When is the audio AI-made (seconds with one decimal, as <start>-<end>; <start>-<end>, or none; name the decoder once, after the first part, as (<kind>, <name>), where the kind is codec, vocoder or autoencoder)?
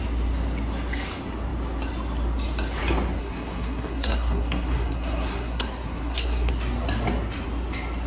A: 3.2-6.5 (codec, SNAC)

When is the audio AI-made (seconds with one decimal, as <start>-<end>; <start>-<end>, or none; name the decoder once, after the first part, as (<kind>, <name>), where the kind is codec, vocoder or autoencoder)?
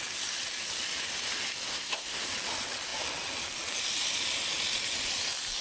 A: 1.7-2.2 (codec, SNAC)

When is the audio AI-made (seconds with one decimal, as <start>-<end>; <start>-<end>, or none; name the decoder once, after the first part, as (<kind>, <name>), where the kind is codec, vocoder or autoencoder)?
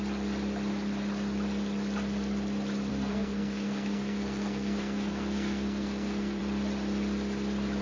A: 2.9-6.4 (codec, SNAC)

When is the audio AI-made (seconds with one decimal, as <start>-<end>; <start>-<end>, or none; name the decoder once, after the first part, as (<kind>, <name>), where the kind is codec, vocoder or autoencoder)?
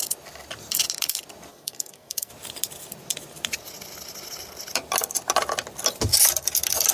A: 1.5-2.3 (codec, SNAC)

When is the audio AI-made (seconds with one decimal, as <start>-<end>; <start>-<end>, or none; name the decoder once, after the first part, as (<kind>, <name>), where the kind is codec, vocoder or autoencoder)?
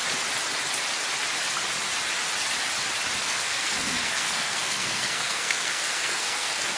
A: 3.2-6.8 (codec, SNAC)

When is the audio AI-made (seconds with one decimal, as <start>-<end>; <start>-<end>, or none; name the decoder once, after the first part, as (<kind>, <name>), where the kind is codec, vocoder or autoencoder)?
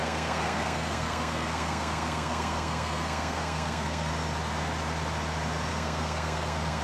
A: 0.0-4.1 (codec, SNAC); 5.7-6.8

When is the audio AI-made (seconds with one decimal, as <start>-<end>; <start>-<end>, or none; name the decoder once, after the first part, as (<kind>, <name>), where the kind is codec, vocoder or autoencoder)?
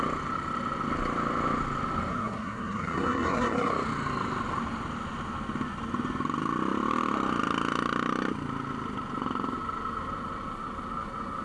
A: 2.1-3.7 (codec, SNAC)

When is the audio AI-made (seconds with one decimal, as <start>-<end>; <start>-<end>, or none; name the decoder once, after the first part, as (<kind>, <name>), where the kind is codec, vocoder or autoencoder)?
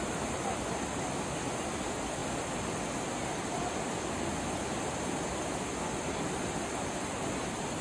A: none